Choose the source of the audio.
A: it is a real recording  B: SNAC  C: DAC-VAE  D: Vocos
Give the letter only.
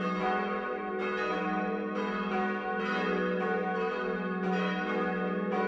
A